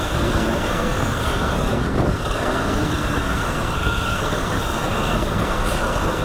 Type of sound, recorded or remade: remade